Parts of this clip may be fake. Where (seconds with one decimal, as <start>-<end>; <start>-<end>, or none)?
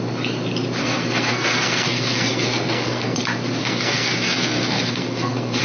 0.8-3.2; 3.6-5.6